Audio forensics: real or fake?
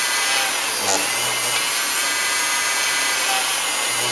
real